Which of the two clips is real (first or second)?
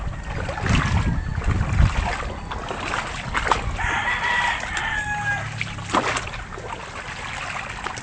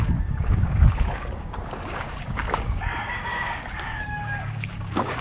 first